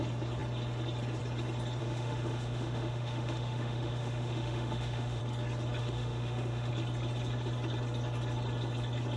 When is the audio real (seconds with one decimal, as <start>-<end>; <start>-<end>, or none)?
0.0-1.8; 5.2-5.8; 6.7-9.2